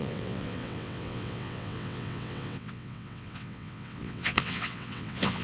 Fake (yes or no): yes